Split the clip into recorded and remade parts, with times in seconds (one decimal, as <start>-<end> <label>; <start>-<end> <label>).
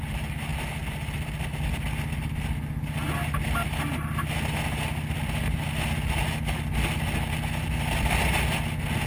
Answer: 0.0-9.1 recorded